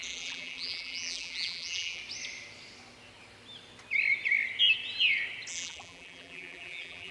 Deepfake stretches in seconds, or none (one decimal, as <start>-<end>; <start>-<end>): 0.0-2.0; 5.5-7.1

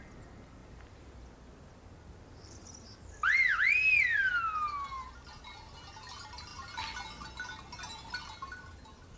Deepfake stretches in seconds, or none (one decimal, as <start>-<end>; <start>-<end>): 0.6-1.1

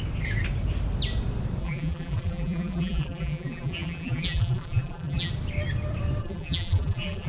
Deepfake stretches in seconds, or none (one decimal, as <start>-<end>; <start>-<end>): 1.6-5.3; 6.2-7.3

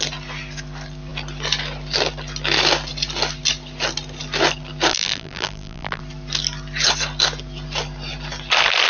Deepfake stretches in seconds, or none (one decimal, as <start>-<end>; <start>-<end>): 4.9-6.0

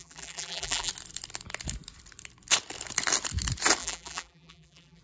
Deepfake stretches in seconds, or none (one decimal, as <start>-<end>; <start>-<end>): 0.0-0.9; 3.8-5.0

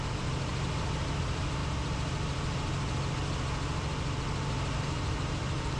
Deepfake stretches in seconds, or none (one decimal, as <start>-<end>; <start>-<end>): 0.0-0.5; 1.2-1.6; 4.8-5.8